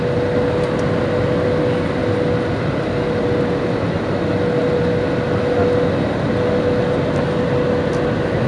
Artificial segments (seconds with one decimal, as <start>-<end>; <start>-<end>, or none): none